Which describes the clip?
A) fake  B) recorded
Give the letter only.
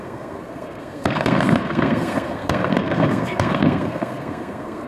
A